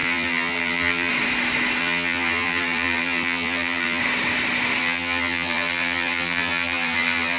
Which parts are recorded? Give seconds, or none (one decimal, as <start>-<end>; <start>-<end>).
1.1-1.8; 4.0-4.8